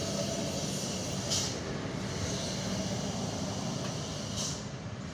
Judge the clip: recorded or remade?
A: recorded